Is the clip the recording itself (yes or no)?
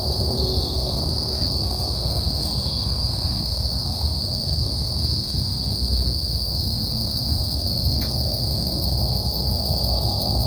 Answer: no